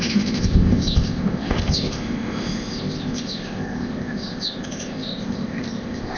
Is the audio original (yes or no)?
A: no